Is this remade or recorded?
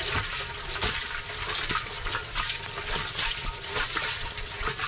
recorded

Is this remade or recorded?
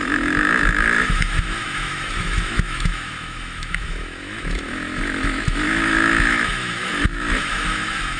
remade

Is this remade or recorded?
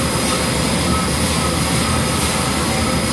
recorded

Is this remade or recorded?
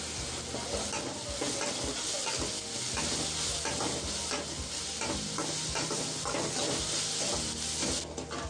recorded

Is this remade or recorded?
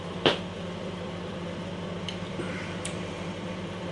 remade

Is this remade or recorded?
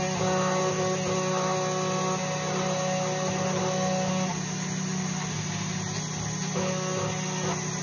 recorded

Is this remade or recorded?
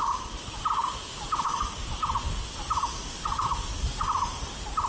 recorded